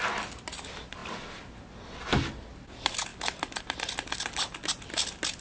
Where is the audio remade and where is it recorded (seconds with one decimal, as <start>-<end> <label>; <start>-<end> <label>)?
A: 0.0-5.4 recorded